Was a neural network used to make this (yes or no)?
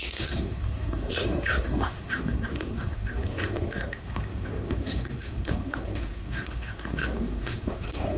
yes